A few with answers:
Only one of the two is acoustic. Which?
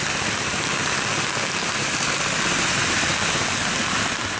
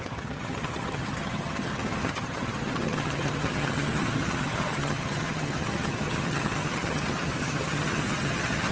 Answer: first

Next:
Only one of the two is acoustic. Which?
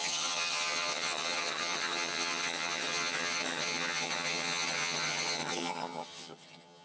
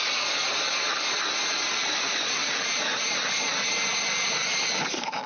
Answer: second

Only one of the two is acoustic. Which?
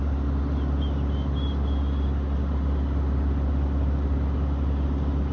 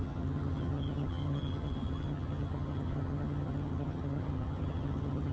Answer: first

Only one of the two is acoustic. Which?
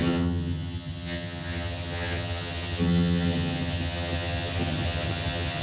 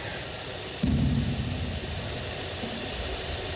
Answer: second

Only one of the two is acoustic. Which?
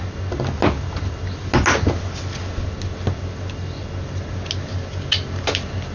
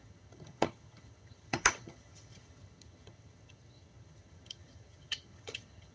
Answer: first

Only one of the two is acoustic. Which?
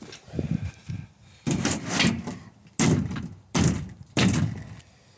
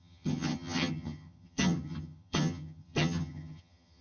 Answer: first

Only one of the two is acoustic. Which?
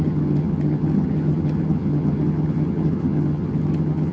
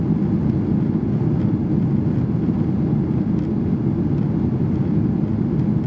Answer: second